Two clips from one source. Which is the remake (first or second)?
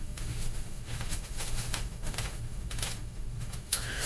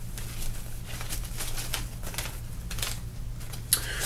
first